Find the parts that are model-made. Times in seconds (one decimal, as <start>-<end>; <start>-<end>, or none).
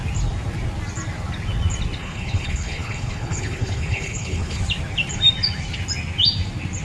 2.0-4.6